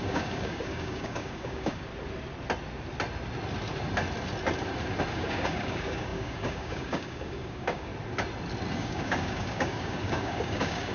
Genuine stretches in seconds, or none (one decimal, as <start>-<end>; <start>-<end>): 1.9-5.1; 7.9-8.8

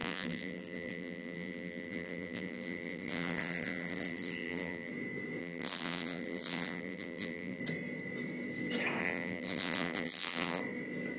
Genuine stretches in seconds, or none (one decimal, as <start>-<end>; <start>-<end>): 4.9-5.4; 7.6-9.0; 10.6-11.2